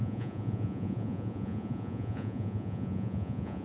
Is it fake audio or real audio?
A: fake